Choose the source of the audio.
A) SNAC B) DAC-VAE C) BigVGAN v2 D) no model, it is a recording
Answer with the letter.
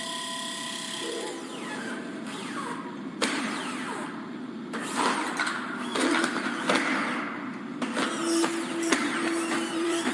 C